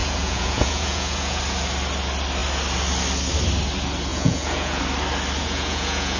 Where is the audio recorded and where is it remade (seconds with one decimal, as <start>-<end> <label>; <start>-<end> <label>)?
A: 0.0-1.4 remade; 1.4-4.1 recorded; 4.1-4.8 remade; 4.8-5.4 recorded; 5.4-6.2 remade